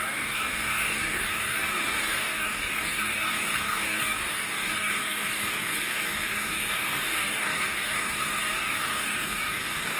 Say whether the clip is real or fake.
fake